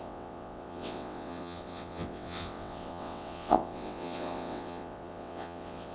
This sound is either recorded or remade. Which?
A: remade